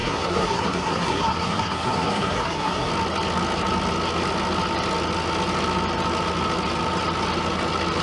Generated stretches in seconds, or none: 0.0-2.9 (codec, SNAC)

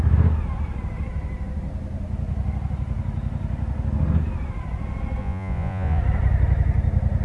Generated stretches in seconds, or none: 5.2-6.0 (vocoder, Vocos)

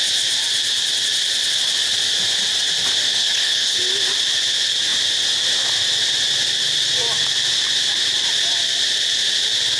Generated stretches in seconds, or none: 3.2-3.8 (codec, HILCodec)

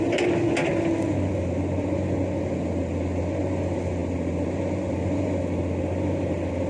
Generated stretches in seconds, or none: none

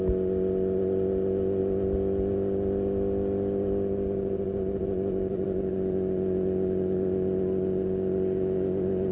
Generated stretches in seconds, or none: none

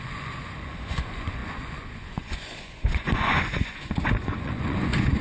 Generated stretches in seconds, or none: 0.0-5.2 (vocoder, Vocos)